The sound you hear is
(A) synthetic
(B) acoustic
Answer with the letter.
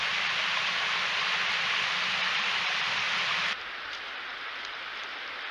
B